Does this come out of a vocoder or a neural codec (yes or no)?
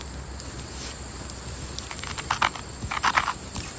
no